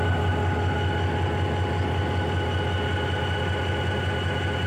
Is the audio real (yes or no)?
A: yes